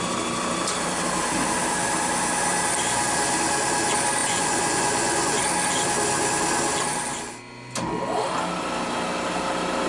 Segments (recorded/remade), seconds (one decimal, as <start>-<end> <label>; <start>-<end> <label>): 0.0-4.2 recorded; 4.2-5.4 remade; 5.4-9.9 recorded